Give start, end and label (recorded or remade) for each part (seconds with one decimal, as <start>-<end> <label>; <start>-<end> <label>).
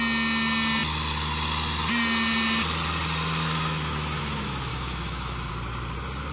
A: 0.0-4.7 recorded; 4.7-5.5 remade; 5.5-6.3 recorded